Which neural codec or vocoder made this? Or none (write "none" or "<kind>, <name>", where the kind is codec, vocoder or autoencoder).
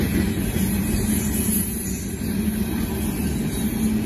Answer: none